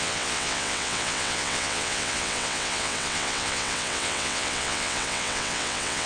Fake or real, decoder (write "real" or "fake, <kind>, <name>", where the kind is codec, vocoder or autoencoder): fake, vocoder, WaveNeXt